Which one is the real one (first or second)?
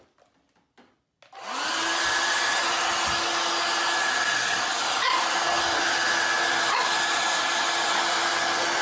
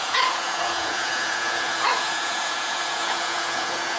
first